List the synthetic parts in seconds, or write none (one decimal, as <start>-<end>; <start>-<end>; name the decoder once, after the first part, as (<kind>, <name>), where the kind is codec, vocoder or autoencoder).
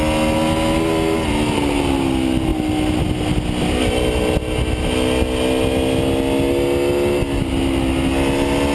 none